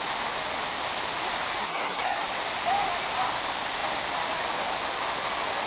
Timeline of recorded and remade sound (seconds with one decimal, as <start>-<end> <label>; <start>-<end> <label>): 0.0-1.6 recorded; 1.6-2.2 remade; 2.2-5.7 recorded